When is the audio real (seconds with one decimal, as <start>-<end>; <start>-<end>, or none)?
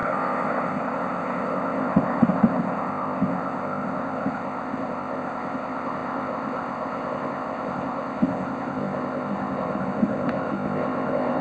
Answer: none